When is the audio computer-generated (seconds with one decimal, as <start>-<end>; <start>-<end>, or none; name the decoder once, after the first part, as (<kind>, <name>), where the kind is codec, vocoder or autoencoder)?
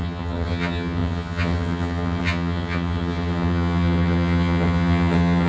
0.0-5.5 (vocoder, HiFi-GAN)